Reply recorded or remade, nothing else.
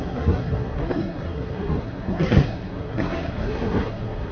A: remade